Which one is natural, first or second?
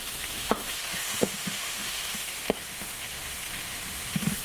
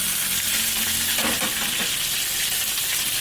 second